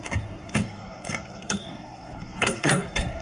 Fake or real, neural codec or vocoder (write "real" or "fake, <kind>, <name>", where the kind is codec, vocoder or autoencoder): fake, codec, SNAC